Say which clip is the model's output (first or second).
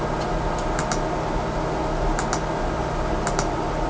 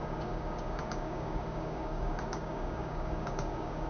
second